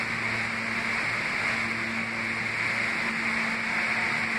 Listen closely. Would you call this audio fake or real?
real